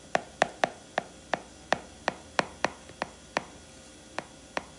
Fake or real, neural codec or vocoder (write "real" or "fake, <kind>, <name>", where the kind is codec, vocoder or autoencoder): real